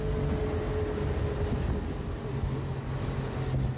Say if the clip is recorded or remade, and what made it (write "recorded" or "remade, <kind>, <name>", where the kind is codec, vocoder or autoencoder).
recorded